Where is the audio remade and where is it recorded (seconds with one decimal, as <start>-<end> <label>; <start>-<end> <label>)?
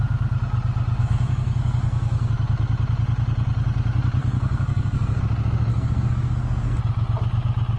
0.0-1.0 recorded; 1.0-2.3 remade; 2.3-4.2 recorded; 4.2-5.2 remade; 5.2-5.7 recorded; 5.7-6.8 remade; 6.8-7.8 recorded